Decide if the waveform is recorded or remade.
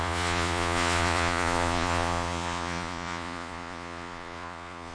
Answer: remade